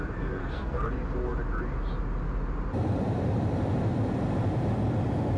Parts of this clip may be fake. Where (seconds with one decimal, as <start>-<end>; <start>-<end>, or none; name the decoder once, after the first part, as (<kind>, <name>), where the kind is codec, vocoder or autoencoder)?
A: 0.4-0.9 (codec, SNAC)